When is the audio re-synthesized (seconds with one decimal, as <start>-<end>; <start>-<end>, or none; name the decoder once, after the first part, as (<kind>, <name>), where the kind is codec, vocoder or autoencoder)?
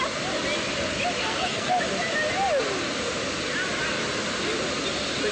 1.2-1.8 (codec, SNAC)